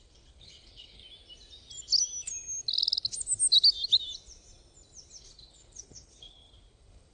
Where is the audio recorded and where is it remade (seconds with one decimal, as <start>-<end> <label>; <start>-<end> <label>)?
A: 0.0-1.0 remade; 1.0-5.2 recorded; 5.2-7.1 remade